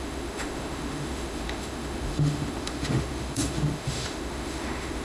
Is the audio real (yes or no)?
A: no